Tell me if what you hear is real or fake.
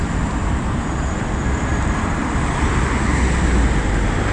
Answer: real